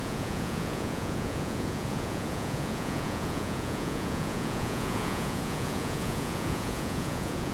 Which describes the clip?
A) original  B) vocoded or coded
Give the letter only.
B